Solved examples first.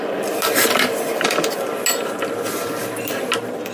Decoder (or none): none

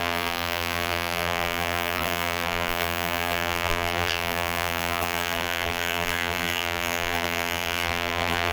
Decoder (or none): vocoder, BigVGAN v2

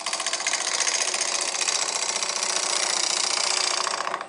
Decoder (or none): none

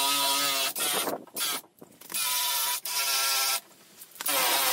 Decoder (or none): none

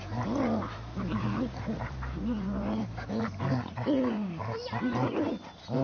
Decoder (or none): vocoder, BigVGAN v2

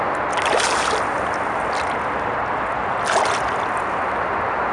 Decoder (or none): none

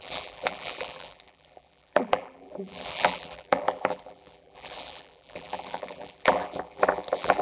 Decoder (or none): vocoder, BigVGAN v2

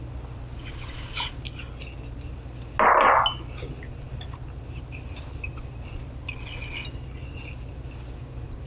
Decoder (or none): none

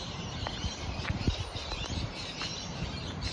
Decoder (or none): vocoder, BigVGAN v2